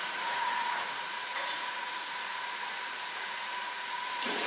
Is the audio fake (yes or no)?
yes